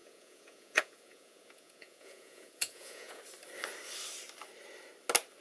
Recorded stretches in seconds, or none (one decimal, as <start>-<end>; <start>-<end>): 3.2-5.4